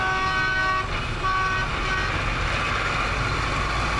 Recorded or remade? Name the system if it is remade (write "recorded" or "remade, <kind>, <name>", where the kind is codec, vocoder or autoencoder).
recorded